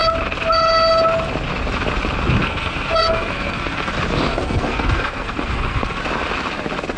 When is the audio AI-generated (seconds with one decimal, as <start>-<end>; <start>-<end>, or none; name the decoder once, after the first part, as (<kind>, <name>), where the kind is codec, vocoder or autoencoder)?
2.4-3.9 (codec, SNAC); 4.3-6.0